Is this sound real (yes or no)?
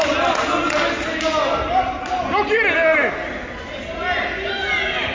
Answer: yes